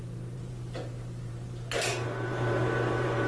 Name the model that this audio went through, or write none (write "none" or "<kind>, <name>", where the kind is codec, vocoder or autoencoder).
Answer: vocoder, BigVGAN v2